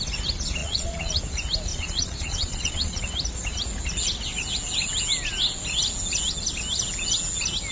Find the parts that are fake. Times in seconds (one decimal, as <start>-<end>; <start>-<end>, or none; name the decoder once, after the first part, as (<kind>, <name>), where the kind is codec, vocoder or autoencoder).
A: 0.6-1.2 (vocoder, Vocos); 1.7-3.0